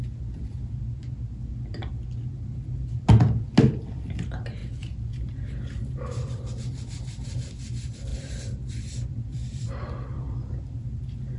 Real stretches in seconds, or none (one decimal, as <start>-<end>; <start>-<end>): 0.0-8.1; 10.6-11.4